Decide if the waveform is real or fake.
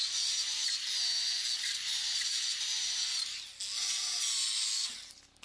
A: real